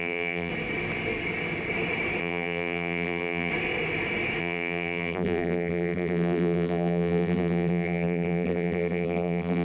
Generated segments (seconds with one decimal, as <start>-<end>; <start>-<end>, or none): 0.0-0.5; 2.2-3.5; 4.4-9.6